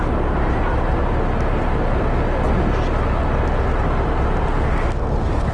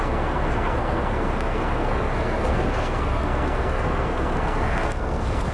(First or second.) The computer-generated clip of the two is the second